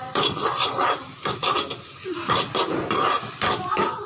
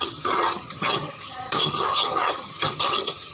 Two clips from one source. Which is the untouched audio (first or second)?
first